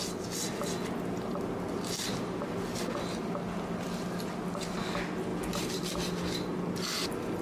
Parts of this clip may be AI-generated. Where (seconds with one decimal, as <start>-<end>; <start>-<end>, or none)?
none